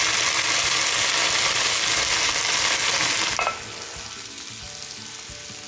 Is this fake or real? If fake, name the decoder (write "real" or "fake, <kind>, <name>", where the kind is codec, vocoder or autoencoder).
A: real